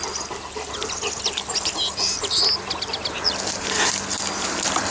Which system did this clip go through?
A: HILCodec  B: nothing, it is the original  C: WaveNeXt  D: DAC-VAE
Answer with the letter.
B